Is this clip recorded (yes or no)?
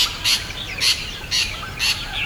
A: yes